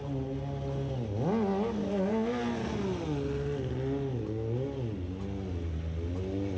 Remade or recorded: recorded